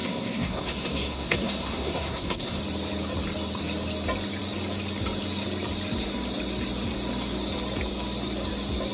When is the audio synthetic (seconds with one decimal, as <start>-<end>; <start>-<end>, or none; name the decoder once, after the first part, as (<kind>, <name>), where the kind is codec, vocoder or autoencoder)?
0.0-2.6 (codec, SNAC)